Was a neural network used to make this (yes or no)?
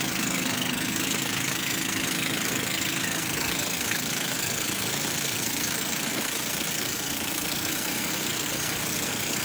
yes